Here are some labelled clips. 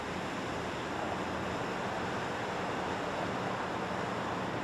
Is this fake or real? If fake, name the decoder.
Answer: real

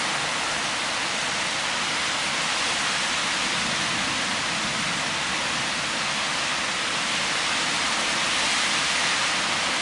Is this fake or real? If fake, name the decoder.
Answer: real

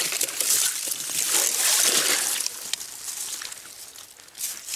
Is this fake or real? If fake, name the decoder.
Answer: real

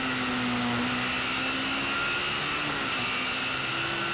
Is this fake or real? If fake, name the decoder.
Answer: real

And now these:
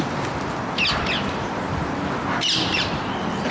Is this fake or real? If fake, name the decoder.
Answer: real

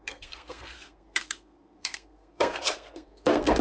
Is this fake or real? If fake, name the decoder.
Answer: fake, codec, SNAC